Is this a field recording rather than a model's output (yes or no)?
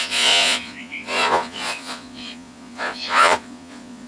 no